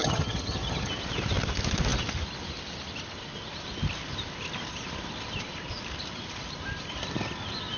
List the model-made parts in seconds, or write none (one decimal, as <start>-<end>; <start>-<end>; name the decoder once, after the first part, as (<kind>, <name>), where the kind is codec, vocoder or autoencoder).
0.0-0.9 (vocoder, HiFi-GAN)